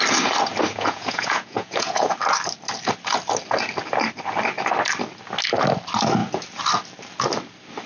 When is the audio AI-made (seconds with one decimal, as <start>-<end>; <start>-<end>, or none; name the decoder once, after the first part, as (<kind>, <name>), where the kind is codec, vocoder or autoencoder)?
0.7-2.1 (vocoder, Vocos)